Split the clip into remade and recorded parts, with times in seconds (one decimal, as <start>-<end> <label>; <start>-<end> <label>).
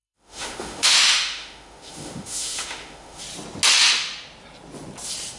0.0-3.2 remade; 3.2-5.4 recorded